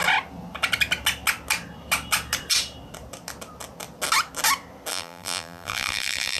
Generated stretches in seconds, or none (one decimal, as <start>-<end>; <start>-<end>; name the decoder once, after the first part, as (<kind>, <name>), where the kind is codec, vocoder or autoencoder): 4.9-6.4 (vocoder, BigVGAN v2)

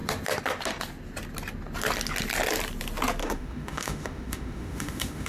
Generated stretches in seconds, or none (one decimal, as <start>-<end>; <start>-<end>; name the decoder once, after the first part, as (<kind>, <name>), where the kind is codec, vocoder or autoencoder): 3.2-5.3 (autoencoder, DAC-VAE)

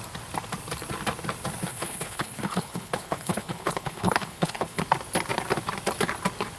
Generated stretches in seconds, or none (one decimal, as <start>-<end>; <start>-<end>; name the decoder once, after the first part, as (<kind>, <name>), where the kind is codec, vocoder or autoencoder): 1.7-4.8 (codec, HILCodec)

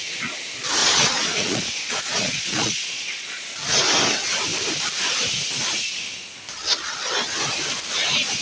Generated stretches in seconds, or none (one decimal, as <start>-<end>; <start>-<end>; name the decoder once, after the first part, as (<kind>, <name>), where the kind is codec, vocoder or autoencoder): 0.8-3.5 (vocoder, Vocos)